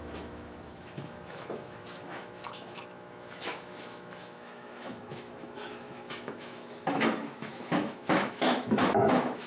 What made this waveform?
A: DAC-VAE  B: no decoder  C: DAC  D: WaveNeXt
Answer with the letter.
A